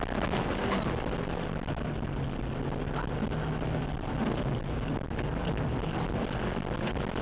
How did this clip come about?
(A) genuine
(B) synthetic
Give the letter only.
A